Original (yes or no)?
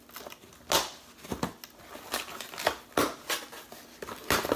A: yes